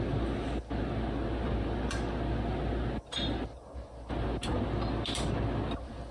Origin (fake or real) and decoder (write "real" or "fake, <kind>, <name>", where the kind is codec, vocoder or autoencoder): real